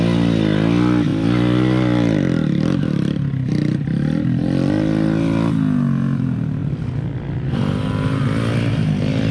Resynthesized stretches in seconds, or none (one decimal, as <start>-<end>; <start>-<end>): none